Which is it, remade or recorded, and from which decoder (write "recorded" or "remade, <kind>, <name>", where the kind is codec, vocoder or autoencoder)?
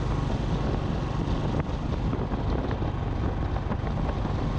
recorded